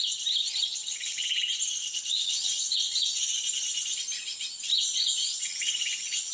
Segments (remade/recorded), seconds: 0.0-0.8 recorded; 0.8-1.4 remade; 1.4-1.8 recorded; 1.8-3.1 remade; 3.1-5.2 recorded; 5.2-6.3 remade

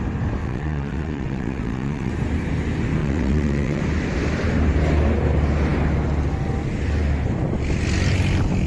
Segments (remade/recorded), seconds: 0.0-0.4 recorded; 0.4-2.1 remade; 2.1-3.0 recorded; 3.0-3.8 remade; 3.8-8.7 recorded

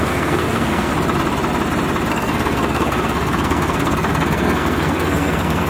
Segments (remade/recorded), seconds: 0.0-0.9 remade; 0.9-2.1 recorded; 2.1-5.7 remade

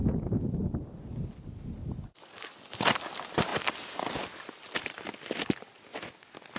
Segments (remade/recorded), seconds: 0.0-6.6 recorded